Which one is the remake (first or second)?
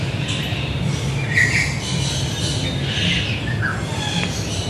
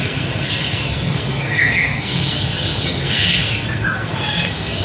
second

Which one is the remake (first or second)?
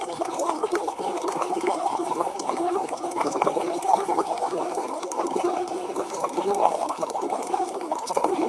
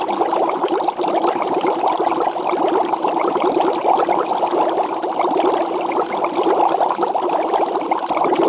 first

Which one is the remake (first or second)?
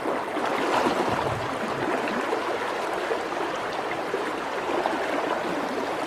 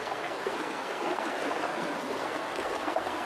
second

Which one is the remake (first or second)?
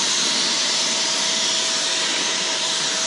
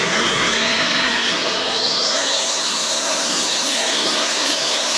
second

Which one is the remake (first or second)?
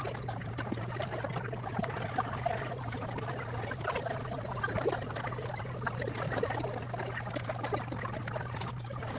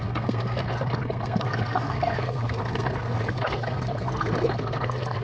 second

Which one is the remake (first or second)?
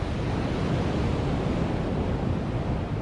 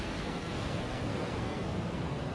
second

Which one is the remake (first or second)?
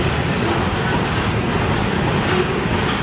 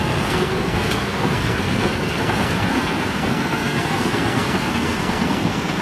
second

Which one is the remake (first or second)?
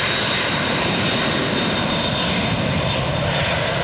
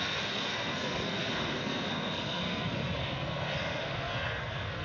second